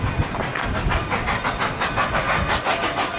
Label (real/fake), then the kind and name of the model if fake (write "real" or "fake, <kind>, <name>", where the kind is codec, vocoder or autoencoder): real